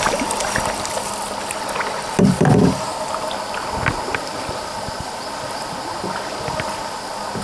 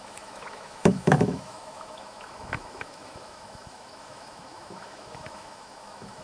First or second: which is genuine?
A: first